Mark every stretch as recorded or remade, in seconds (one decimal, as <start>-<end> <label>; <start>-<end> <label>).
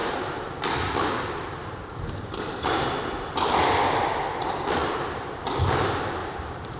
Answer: 0.0-0.6 remade; 0.6-1.6 recorded; 1.6-2.9 remade; 2.9-6.2 recorded; 6.2-6.8 remade